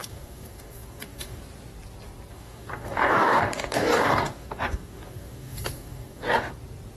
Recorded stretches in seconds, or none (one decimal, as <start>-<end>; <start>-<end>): 1.4-2.3; 6.5-7.0